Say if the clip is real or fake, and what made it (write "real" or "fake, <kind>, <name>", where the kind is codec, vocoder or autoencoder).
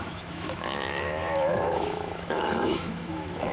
fake, autoencoder, DAC-VAE